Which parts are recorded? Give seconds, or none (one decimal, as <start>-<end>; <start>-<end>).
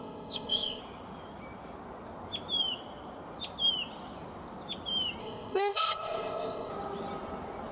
0.8-5.2; 6.7-7.7